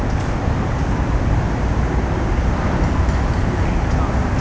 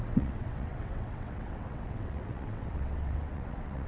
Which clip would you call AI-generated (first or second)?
second